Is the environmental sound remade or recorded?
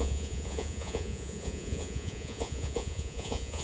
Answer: remade